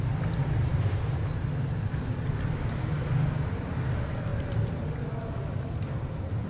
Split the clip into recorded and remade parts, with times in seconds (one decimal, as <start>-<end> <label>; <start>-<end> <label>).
0.0-6.5 recorded